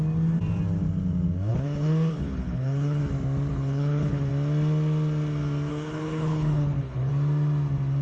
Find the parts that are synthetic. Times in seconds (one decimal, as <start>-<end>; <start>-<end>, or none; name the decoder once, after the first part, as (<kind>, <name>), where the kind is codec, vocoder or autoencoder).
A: 1.5-3.0 (codec, HILCodec); 3.5-4.3; 5.7-7.1